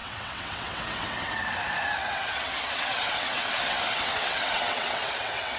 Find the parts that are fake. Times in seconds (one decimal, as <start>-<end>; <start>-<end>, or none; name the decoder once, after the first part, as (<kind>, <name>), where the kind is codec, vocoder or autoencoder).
0.0-1.4 (vocoder, WaveNeXt); 2.0-5.6